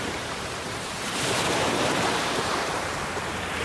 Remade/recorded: remade